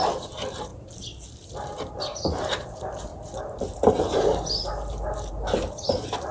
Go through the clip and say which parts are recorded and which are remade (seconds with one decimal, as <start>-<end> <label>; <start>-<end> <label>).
0.0-0.7 remade; 0.7-1.3 recorded; 1.3-6.3 remade